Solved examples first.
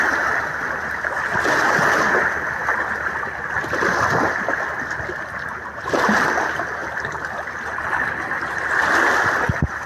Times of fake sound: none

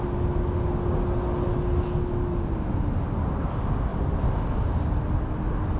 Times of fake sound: none

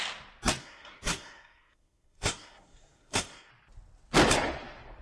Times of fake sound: 0.6-3.5 (codec, SNAC)

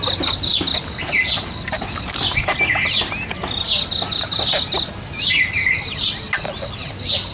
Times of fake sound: none

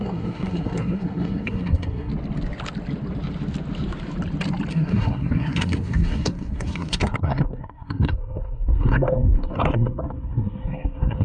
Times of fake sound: 0.0-2.1 (codec, SNAC); 4.7-11.2